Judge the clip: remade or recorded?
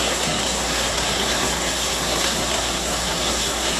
remade